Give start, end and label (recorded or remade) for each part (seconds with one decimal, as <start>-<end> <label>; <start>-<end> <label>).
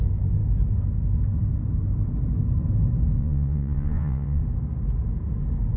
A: 0.0-3.2 recorded; 3.2-4.4 remade; 4.4-5.8 recorded